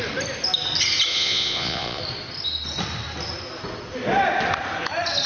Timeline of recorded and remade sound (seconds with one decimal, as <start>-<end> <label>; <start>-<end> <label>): 0.0-1.1 recorded; 1.1-2.0 remade; 2.0-5.3 recorded